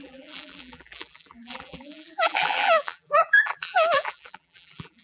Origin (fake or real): fake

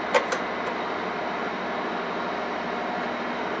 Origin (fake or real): real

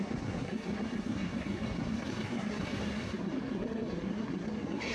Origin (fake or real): fake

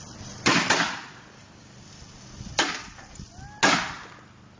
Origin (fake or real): real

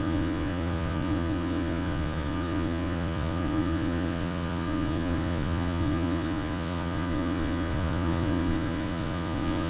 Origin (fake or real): fake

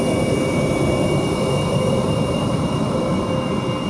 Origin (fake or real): fake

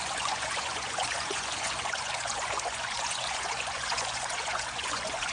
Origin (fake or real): fake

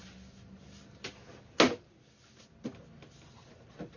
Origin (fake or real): real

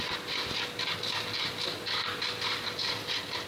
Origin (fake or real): real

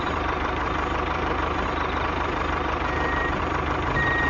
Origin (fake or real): fake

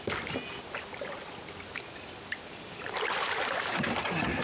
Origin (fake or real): real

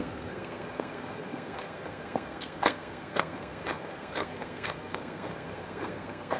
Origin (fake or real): fake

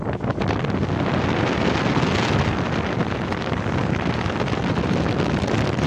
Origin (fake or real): real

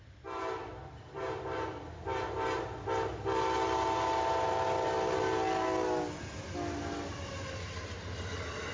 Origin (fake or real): real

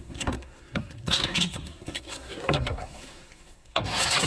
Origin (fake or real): fake